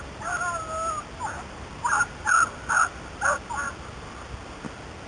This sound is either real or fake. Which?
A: real